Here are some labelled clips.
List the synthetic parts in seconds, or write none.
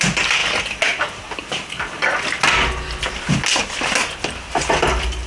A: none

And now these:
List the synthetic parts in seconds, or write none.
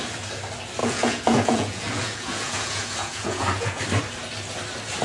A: 0.8-3.8 (vocoder, Vocos)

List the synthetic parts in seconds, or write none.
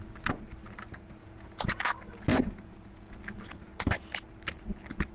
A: 1.2-1.8 (vocoder, Vocos); 2.3-3.1